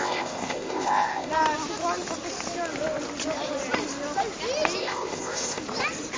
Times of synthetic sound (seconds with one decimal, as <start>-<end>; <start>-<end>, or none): 0.0-1.3; 4.8-5.6